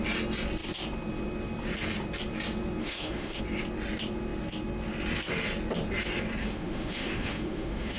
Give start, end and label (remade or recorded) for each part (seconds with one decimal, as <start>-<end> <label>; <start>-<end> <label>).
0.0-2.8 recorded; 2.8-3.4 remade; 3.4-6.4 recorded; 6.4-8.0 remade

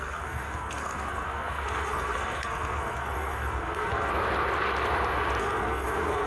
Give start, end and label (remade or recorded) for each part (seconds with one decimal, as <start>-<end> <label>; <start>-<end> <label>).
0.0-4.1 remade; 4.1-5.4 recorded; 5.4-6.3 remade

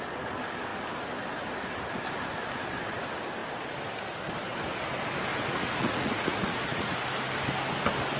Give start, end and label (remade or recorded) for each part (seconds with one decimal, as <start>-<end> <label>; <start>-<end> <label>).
0.0-5.3 recorded; 5.3-7.0 remade; 7.0-8.2 recorded

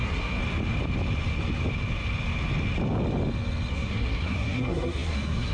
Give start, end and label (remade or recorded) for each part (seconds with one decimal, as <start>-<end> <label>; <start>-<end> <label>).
0.0-0.4 remade; 0.4-3.7 recorded; 3.7-5.5 remade